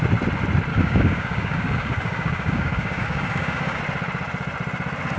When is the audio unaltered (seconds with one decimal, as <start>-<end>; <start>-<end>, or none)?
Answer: 0.0-0.7; 3.8-5.2